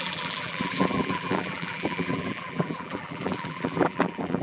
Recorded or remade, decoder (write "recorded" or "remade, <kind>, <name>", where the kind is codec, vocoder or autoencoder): remade, vocoder, BigVGAN v2